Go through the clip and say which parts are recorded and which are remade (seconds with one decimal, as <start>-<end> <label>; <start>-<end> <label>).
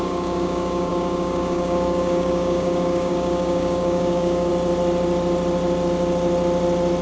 0.0-4.5 remade; 4.5-7.0 recorded